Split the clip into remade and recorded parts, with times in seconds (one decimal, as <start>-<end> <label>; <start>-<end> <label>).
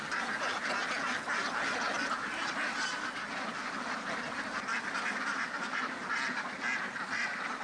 0.0-7.6 recorded